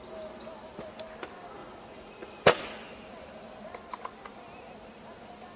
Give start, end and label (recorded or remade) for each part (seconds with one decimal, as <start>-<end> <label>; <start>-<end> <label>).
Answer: 0.0-1.6 recorded; 1.6-2.6 remade; 2.6-5.6 recorded